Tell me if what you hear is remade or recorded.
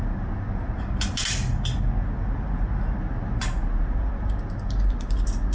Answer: recorded